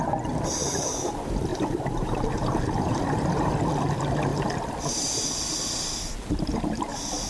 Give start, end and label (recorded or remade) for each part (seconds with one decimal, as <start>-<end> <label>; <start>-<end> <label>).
0.0-1.5 recorded; 1.5-3.0 remade; 3.0-7.3 recorded